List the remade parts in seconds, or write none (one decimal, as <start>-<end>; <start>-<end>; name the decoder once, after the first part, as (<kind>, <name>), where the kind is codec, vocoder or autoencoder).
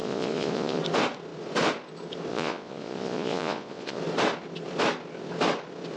0.0-0.8 (vocoder, Vocos); 2.3-4.0